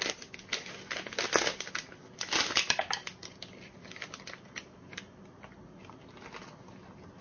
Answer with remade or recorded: recorded